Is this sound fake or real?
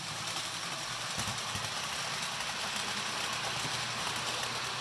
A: real